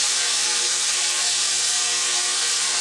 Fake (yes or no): yes